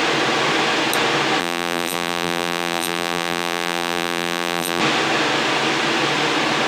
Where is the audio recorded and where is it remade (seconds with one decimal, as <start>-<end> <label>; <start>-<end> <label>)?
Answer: 0.0-1.4 recorded; 1.4-4.8 remade; 4.8-6.7 recorded

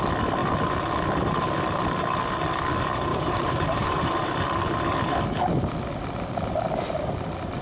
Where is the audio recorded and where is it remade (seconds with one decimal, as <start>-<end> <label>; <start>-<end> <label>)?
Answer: 0.0-3.1 recorded; 3.1-4.2 remade; 4.2-7.6 recorded

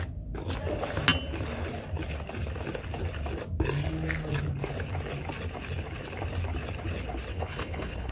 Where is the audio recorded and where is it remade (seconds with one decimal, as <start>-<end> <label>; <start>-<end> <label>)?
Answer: 0.0-7.3 recorded; 7.3-8.1 remade

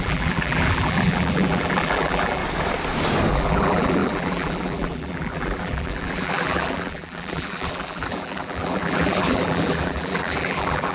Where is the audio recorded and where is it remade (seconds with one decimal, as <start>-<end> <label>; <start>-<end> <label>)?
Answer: 0.0-2.4 remade; 2.4-3.3 recorded; 3.3-10.9 remade